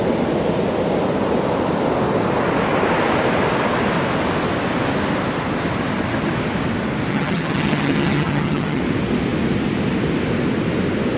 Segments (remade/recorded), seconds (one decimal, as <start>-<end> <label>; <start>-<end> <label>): 0.0-7.1 recorded; 7.1-8.8 remade; 8.8-11.2 recorded